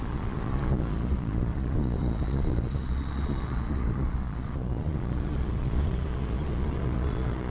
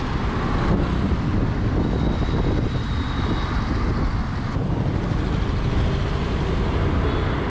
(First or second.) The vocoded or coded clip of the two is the first